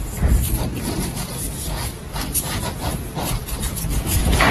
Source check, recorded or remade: recorded